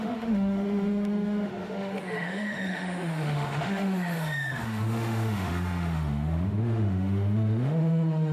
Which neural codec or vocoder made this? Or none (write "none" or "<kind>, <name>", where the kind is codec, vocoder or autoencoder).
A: autoencoder, DAC-VAE